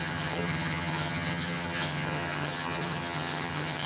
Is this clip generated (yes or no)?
yes